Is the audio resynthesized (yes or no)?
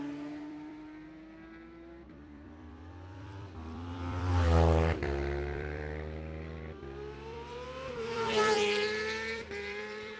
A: yes